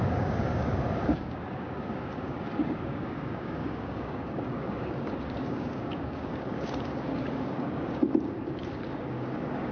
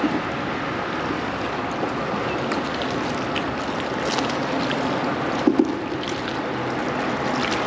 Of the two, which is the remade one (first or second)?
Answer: first